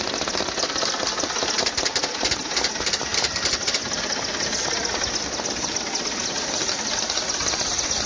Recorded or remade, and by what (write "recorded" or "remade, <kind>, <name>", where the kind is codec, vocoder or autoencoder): recorded